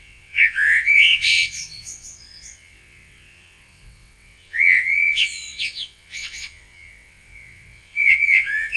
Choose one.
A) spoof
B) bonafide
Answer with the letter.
A